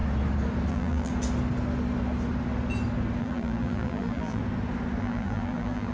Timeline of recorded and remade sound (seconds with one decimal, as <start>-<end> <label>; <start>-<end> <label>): 0.0-0.7 recorded; 0.7-1.1 remade; 1.1-3.2 recorded; 3.2-4.4 remade; 4.4-5.0 recorded; 5.0-5.9 remade